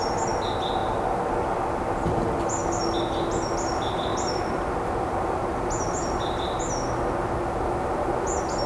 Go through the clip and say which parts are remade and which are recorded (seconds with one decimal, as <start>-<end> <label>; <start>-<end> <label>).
0.0-8.7 recorded